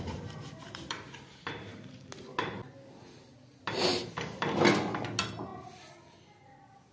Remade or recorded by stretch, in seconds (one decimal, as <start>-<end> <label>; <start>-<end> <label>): 0.0-6.9 recorded